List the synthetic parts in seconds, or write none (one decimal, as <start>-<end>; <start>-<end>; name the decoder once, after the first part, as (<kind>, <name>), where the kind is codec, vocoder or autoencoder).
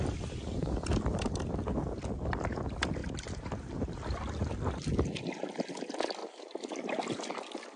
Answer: 6.2-6.8 (vocoder, BigVGAN v2)